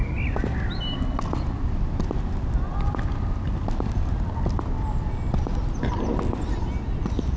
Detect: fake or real real